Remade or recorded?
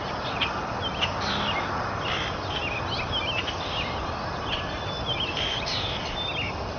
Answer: recorded